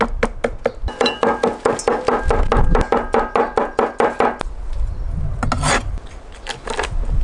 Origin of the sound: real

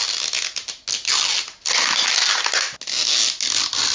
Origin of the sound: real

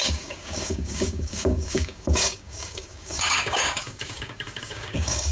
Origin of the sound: fake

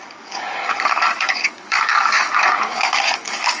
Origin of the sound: fake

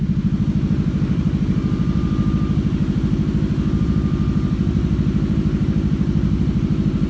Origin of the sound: real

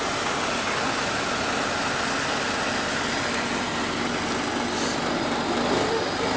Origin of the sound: real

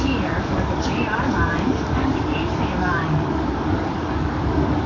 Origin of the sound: fake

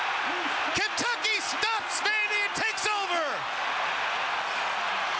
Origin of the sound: real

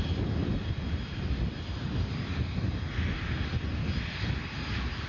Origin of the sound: real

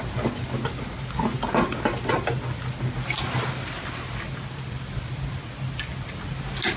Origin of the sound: real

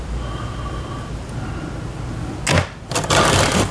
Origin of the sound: real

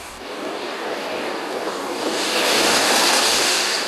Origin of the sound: fake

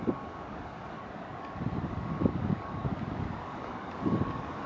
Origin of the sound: fake